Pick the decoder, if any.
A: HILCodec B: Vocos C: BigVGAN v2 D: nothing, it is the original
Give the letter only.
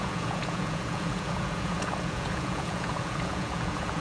B